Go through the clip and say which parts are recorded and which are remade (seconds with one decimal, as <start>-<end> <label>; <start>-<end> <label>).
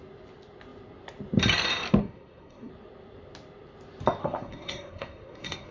0.0-2.0 recorded; 2.0-2.7 remade; 2.7-4.2 recorded; 4.2-5.7 remade